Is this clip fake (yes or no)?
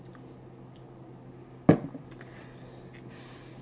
no